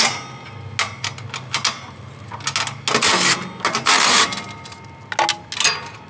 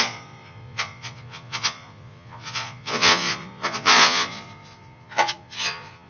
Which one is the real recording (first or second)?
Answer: first